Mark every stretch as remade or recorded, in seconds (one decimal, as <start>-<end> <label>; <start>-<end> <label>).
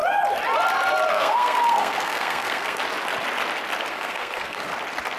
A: 0.0-1.1 recorded; 1.1-2.8 remade; 2.8-3.9 recorded; 3.9-4.7 remade; 4.7-5.2 recorded